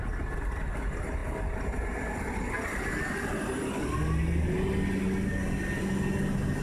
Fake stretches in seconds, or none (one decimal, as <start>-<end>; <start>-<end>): none